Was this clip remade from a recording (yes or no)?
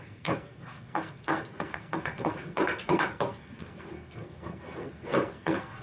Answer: yes